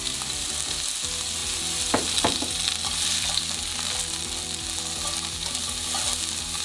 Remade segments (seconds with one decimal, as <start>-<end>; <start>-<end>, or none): none